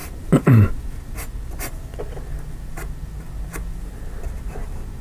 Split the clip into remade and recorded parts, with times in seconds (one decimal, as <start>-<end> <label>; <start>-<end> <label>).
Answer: 0.0-0.7 remade; 0.7-5.0 recorded